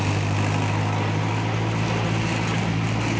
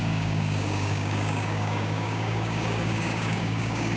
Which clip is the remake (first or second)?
second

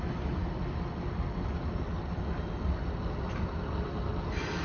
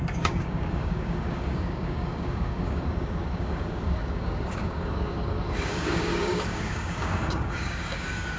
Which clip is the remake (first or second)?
second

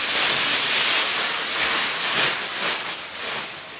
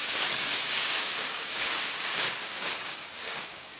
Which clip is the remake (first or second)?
second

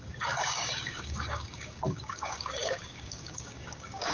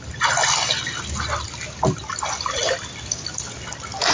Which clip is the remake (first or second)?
first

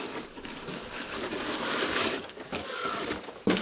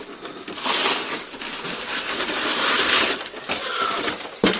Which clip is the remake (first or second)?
first